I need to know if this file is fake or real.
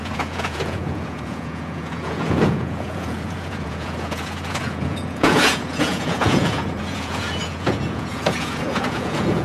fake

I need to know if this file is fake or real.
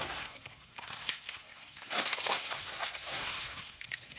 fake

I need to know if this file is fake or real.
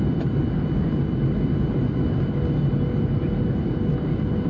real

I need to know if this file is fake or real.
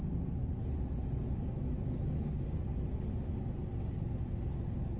real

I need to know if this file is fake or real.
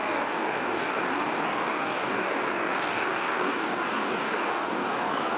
fake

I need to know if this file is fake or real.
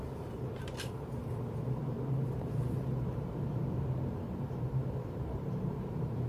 fake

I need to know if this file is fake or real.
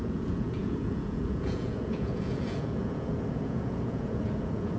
fake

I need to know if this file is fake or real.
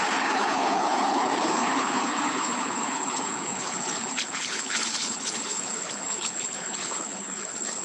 fake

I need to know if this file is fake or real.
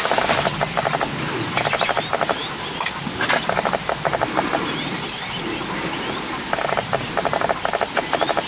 real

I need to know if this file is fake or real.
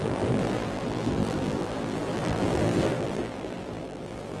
fake